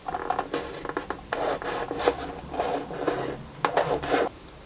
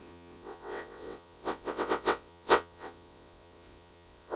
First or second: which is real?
first